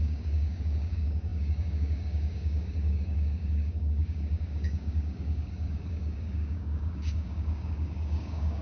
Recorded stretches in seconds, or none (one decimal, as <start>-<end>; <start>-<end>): none